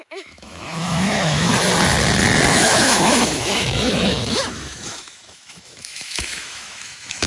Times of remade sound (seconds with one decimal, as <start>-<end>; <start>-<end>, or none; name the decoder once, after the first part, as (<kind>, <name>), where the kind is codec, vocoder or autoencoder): 0.0-1.5 (autoencoder, DAC-VAE); 2.5-7.3